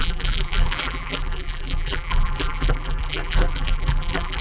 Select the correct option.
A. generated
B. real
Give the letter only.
A